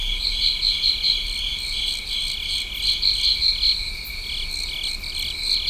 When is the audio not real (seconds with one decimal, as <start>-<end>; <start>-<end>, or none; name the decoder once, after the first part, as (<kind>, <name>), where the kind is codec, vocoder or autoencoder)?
none

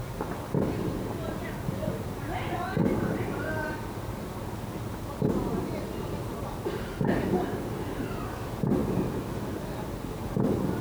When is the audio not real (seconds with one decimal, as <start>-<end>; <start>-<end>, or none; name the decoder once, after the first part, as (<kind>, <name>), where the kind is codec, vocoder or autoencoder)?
none

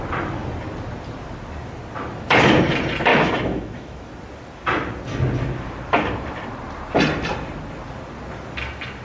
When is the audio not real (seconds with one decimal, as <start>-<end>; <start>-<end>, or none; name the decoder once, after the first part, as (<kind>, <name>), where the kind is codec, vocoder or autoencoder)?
3.1-4.1 (autoencoder, DAC-VAE)

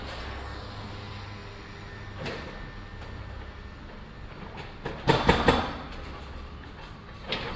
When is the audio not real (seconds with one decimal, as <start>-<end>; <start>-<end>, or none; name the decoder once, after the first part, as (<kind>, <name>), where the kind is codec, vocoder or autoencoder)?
none

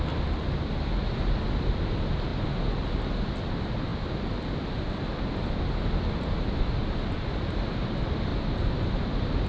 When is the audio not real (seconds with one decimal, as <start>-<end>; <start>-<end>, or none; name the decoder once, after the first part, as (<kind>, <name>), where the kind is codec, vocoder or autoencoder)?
none